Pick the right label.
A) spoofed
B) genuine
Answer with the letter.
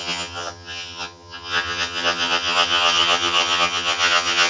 A